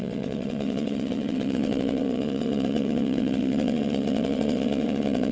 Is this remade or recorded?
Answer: remade